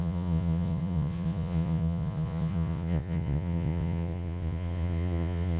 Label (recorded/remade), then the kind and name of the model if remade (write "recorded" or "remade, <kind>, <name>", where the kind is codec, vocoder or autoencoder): remade, vocoder, Vocos